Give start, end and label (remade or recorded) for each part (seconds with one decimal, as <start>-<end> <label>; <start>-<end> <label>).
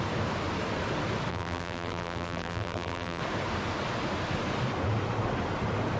0.0-1.3 recorded; 1.3-3.2 remade; 3.2-6.0 recorded